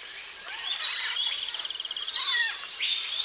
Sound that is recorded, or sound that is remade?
remade